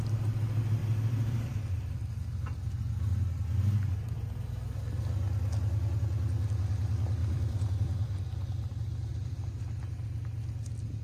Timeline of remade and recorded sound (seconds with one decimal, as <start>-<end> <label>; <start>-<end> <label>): 0.0-0.8 recorded; 0.8-1.9 remade; 1.9-7.2 recorded; 7.2-8.2 remade; 8.2-9.1 recorded; 9.1-9.8 remade; 9.8-11.0 recorded